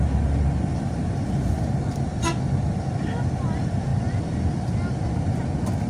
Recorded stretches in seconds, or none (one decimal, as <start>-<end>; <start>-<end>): 0.0-3.9; 5.4-5.9